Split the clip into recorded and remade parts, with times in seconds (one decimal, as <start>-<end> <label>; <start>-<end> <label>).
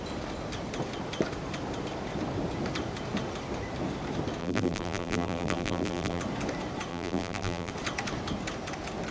0.0-4.4 recorded; 4.4-6.2 remade; 6.2-6.9 recorded; 6.9-7.7 remade; 7.7-9.1 recorded